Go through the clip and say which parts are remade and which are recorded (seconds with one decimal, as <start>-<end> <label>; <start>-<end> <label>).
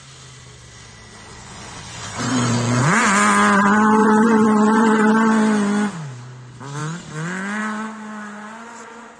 0.0-1.3 recorded; 1.3-2.8 remade; 2.8-4.0 recorded; 4.0-5.1 remade; 5.1-9.2 recorded